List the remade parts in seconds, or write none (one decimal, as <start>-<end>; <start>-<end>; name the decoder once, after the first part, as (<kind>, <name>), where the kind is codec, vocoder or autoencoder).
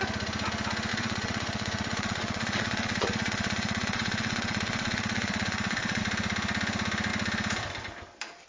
0.9-6.0 (vocoder, WaveNeXt)